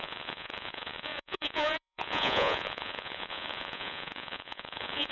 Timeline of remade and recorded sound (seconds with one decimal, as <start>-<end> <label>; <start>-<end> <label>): 0.0-5.1 remade

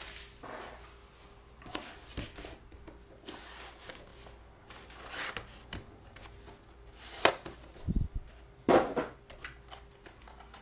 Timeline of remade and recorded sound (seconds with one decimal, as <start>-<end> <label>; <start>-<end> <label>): 0.0-10.6 recorded

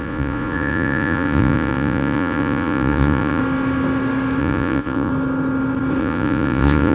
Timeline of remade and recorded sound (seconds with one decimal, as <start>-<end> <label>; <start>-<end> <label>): 0.0-3.4 remade; 3.4-4.4 recorded; 4.4-5.1 remade; 5.1-6.0 recorded; 6.0-6.9 remade

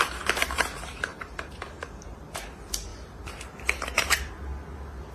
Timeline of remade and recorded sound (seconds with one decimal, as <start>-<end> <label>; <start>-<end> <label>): 0.0-1.1 recorded; 1.1-2.2 remade; 2.2-5.1 recorded

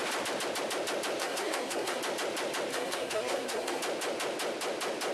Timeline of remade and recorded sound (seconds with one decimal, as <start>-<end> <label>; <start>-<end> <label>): 0.0-1.2 recorded; 1.2-2.0 remade; 2.0-2.7 recorded; 2.7-3.8 remade; 3.8-5.1 recorded

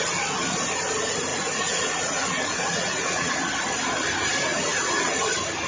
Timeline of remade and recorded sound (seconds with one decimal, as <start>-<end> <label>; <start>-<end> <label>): 0.0-1.3 recorded; 1.3-3.3 remade; 3.3-4.5 recorded; 4.5-5.3 remade; 5.3-5.7 recorded

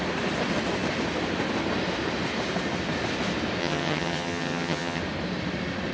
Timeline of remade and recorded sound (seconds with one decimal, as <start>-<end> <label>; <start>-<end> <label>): 0.0-3.6 recorded; 3.6-5.0 remade; 5.0-5.9 recorded

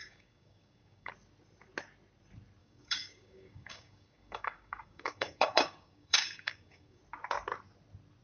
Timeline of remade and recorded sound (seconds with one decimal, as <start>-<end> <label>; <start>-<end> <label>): 0.0-1.1 remade; 1.1-2.6 recorded; 2.6-7.0 remade; 7.0-8.2 recorded